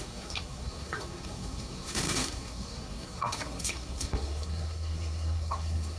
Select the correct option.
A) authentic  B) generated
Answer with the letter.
B